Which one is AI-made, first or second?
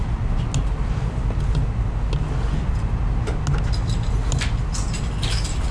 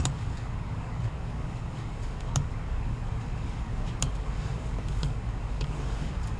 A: second